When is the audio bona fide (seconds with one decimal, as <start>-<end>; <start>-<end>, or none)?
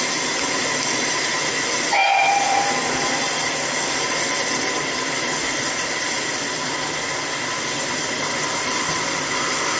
0.0-9.8